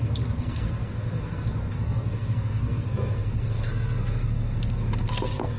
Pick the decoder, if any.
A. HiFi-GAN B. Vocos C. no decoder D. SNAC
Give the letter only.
D